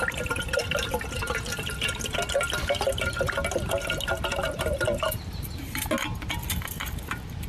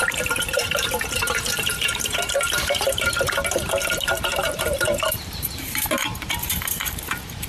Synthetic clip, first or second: second